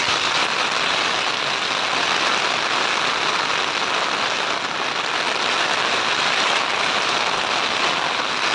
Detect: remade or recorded recorded